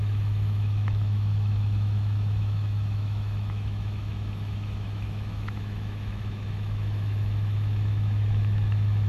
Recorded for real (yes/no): no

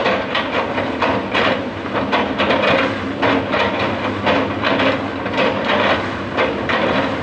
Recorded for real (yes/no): yes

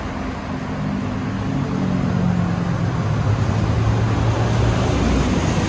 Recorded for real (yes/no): yes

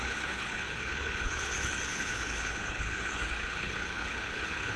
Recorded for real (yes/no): no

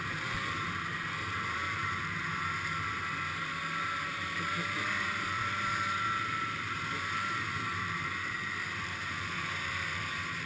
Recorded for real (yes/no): no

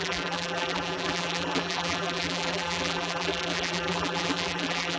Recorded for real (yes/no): no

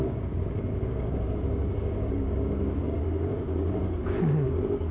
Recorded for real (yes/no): no